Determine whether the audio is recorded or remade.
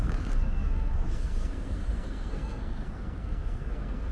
remade